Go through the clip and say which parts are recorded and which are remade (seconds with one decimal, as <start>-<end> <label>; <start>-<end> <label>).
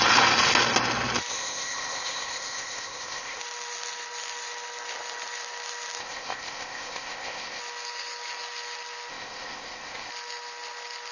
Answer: 0.0-1.3 recorded; 1.3-3.4 remade; 3.4-6.0 recorded; 6.0-7.6 remade; 7.6-9.1 recorded; 9.1-10.1 remade; 10.1-11.1 recorded